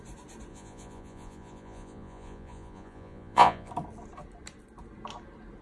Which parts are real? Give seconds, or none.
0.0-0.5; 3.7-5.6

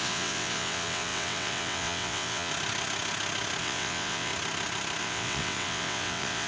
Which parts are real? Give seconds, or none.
2.5-3.6; 4.3-5.0

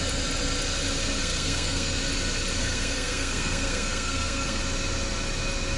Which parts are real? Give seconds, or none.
0.0-1.2; 2.0-2.6; 4.6-5.8

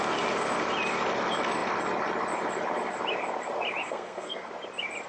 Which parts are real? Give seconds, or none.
0.0-3.8; 4.5-5.1

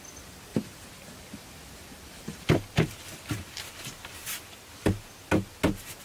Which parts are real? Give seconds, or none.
0.0-0.5; 3.6-6.0

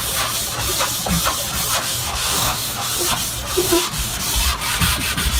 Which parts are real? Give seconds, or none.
0.0-1.8; 2.9-3.6; 4.2-5.4

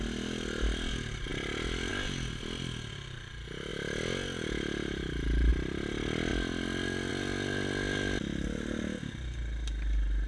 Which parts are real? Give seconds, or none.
0.0-10.3